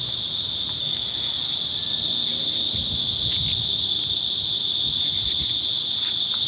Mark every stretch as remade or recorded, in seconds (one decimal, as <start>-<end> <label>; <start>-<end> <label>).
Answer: 0.0-0.8 recorded; 0.8-1.4 remade; 1.4-6.5 recorded